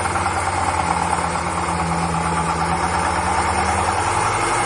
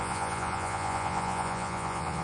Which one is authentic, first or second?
first